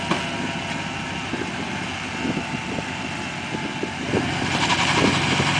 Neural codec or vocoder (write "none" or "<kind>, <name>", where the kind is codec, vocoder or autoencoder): none